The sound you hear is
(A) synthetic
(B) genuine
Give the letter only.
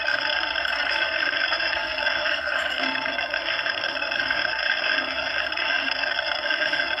A